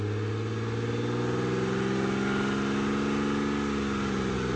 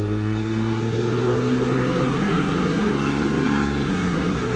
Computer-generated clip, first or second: second